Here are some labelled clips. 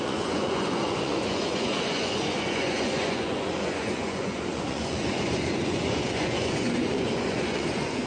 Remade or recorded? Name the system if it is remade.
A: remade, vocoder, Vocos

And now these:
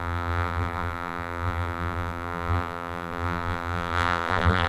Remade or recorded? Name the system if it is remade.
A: remade, vocoder, BigVGAN v2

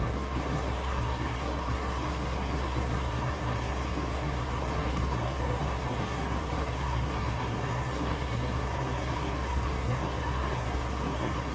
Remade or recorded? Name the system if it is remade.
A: remade, codec, SNAC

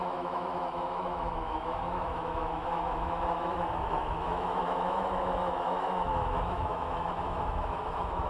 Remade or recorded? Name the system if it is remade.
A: remade, autoencoder, DAC-VAE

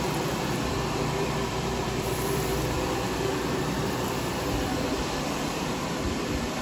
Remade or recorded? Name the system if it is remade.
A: remade, vocoder, BigVGAN v2